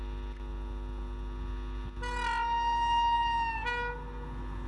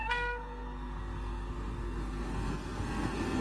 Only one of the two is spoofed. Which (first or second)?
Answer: second